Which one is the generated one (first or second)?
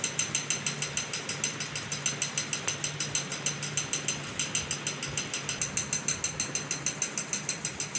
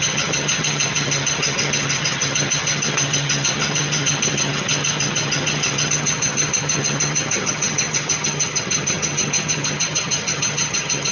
second